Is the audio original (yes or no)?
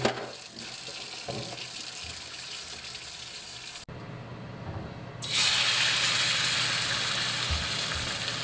yes